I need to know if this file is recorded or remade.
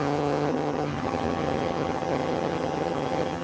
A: remade